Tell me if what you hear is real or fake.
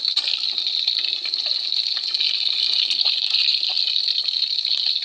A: real